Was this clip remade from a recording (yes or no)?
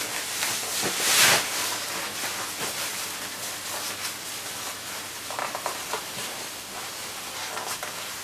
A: no